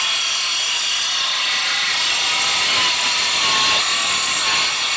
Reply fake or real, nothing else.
real